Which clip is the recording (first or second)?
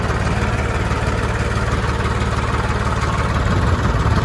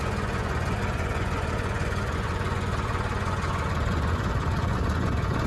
first